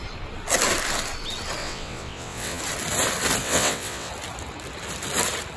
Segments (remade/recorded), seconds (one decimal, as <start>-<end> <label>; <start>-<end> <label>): 0.0-1.6 recorded; 1.6-2.6 remade; 2.6-3.4 recorded; 3.4-4.1 remade; 4.1-5.6 recorded